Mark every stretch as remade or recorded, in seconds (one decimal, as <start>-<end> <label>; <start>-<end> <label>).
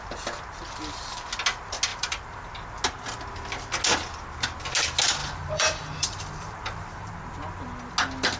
0.0-1.9 recorded; 1.9-2.5 remade; 2.5-5.2 recorded; 5.2-7.1 remade; 7.1-8.4 recorded